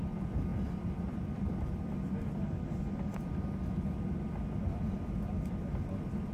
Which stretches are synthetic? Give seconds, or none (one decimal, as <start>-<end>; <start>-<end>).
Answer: none